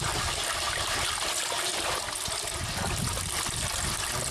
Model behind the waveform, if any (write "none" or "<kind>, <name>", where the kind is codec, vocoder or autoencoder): none